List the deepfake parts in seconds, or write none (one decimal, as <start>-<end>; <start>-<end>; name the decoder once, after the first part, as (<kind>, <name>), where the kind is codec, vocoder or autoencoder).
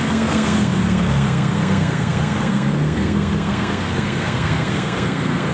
0.0-5.5 (codec, SNAC)